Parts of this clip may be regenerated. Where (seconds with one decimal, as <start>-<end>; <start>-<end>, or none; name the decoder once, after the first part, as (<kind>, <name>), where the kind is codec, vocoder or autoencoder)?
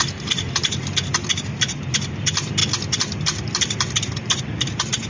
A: 2.6-4.4 (vocoder, BigVGAN v2)